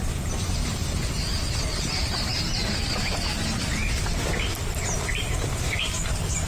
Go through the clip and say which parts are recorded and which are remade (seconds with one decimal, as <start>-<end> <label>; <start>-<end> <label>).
0.0-6.5 recorded